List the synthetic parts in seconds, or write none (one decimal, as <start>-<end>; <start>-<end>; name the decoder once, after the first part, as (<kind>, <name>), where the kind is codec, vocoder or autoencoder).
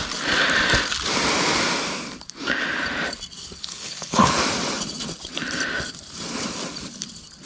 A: 3.4-4.3 (codec, HILCodec)